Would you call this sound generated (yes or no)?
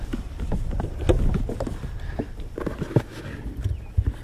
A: no